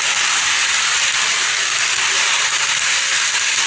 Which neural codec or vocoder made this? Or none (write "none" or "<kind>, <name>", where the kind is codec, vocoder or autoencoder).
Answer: none